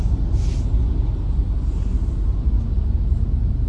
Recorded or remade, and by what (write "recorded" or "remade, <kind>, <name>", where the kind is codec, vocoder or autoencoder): recorded